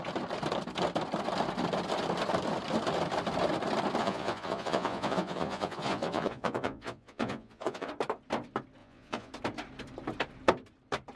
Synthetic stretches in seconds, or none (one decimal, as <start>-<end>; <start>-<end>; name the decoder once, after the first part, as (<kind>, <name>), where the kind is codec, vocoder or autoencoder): 4.0-7.9 (vocoder, Vocos); 8.8-9.3